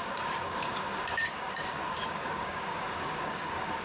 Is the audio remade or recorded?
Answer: remade